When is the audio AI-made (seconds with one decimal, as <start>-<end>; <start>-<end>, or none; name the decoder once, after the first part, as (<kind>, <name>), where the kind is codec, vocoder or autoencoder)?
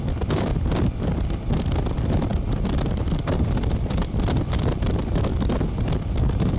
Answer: 0.0-0.5 (vocoder, BigVGAN v2); 1.2-2.3; 3.0-5.3; 5.8-6.6